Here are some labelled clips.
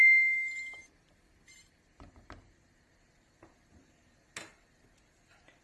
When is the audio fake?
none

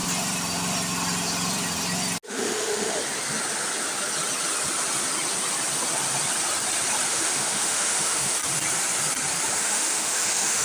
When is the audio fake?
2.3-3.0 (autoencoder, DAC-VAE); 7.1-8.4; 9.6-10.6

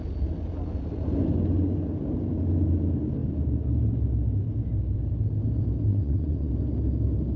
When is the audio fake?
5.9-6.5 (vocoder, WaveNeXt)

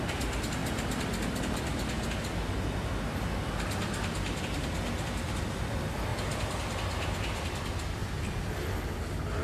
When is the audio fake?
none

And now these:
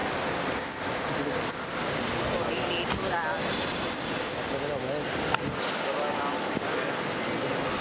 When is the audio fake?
none